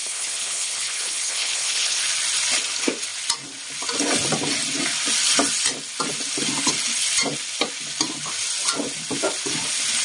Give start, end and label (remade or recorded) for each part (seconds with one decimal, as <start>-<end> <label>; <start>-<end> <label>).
0.0-2.0 remade; 2.0-10.0 recorded